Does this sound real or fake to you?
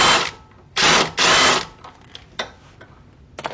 real